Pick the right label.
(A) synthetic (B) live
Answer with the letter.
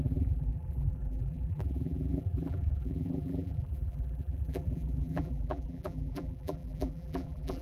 A